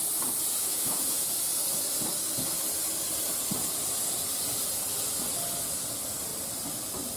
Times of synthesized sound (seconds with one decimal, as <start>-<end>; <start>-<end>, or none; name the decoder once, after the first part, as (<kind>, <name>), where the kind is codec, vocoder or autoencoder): 0.6-1.2 (autoencoder, DAC-VAE)